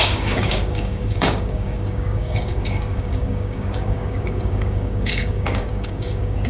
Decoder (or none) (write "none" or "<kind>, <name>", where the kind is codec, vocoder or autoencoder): codec, DAC